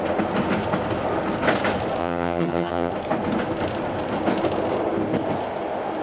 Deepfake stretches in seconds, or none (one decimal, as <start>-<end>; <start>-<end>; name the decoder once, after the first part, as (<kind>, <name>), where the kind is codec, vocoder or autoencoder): 2.0-2.9 (vocoder, HiFi-GAN)